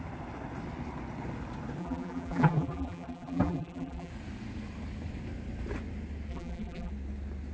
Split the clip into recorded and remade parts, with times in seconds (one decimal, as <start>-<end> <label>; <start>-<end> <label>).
0.0-1.8 recorded; 1.8-4.1 remade; 4.1-6.3 recorded; 6.3-6.9 remade; 6.9-7.5 recorded